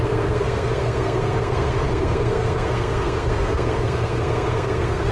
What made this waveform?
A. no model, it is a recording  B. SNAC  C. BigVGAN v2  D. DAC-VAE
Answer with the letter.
B